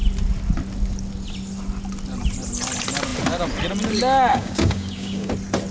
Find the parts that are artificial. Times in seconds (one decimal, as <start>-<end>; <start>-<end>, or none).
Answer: 4.3-5.3